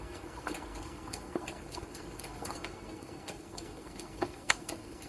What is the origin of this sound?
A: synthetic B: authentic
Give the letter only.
A